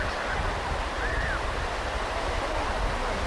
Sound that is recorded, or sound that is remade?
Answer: recorded